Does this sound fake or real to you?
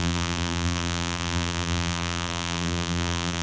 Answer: fake